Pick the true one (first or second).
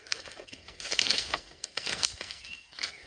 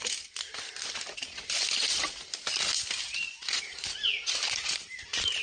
second